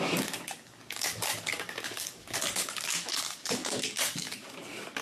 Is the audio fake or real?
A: fake